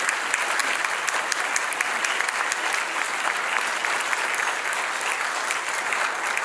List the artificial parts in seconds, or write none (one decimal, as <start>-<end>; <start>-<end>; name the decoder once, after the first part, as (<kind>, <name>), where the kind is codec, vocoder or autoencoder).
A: none